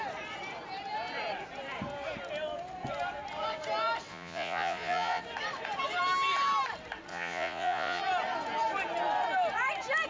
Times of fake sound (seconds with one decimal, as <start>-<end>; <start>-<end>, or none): 4.1-5.2; 7.1-8.0